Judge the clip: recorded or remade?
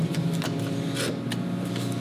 recorded